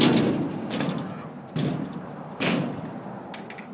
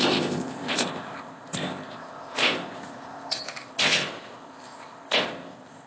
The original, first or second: first